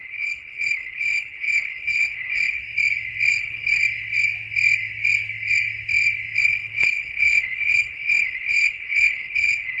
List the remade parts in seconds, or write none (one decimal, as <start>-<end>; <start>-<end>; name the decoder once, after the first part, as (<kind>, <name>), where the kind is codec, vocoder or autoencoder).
0.0-2.6 (codec, HILCodec); 3.3-3.8; 6.4-9.8

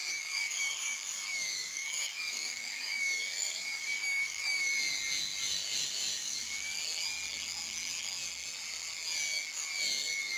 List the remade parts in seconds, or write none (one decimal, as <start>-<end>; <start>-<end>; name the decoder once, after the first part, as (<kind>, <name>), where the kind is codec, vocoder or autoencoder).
0.0-4.7 (codec, DAC); 6.2-6.8